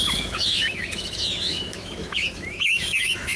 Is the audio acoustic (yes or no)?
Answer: no